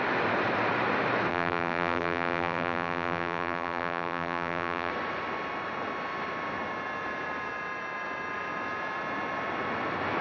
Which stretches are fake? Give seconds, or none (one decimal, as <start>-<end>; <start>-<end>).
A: 1.3-4.9